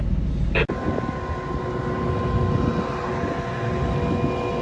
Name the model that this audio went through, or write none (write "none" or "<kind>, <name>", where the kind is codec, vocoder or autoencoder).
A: none